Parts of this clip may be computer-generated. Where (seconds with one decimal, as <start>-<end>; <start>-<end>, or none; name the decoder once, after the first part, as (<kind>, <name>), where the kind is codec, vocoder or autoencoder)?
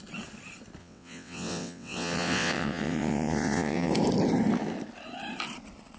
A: 0.8-3.9 (vocoder, WaveNeXt)